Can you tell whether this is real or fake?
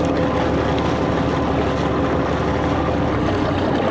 real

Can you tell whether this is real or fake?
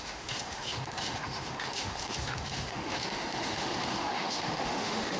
fake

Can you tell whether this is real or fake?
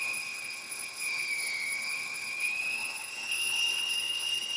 fake